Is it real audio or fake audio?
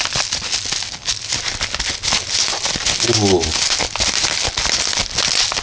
real